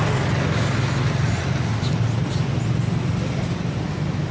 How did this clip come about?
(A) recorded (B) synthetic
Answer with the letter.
A